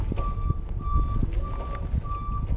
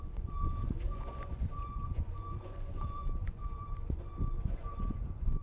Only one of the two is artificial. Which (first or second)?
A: second